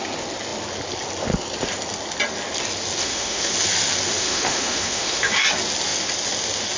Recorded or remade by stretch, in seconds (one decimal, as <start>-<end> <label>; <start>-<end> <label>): 0.0-3.0 recorded; 3.0-3.5 remade; 3.5-4.2 recorded; 4.2-5.3 remade; 5.3-6.8 recorded